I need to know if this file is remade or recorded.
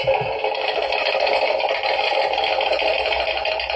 recorded